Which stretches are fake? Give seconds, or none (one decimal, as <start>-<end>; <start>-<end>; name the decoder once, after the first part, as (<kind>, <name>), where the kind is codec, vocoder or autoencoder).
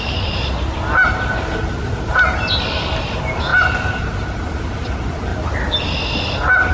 none